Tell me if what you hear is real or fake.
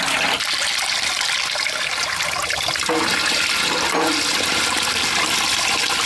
real